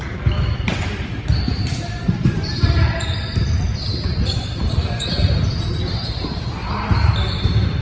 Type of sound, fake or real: fake